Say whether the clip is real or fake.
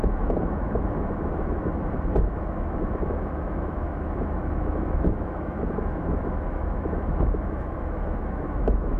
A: fake